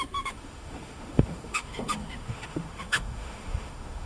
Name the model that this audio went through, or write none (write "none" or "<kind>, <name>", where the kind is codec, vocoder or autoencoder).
autoencoder, DAC-VAE